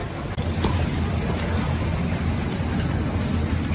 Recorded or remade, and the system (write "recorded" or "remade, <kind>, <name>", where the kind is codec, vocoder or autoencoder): recorded